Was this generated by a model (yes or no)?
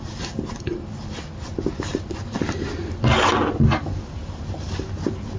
no